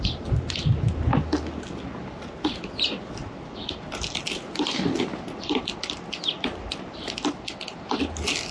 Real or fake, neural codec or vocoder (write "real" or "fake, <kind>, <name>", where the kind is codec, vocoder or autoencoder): real